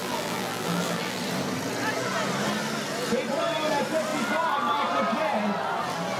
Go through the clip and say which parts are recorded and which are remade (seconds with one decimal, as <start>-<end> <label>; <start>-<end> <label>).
0.0-1.2 remade; 1.2-6.2 recorded